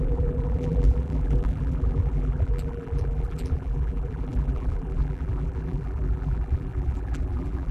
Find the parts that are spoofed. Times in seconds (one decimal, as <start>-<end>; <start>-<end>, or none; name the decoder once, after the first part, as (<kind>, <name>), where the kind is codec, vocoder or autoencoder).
0.0-7.7 (vocoder, BigVGAN v2)